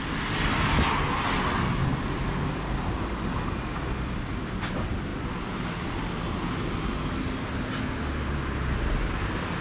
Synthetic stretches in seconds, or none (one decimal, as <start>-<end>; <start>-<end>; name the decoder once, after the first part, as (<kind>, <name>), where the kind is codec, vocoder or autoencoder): none